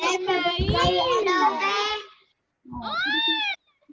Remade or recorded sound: recorded